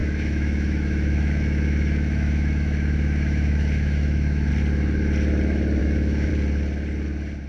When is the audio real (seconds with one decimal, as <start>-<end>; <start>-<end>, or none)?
4.5-5.8; 6.3-7.5